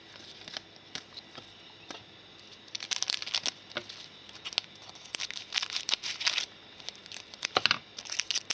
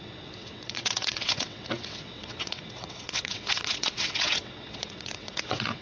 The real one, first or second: first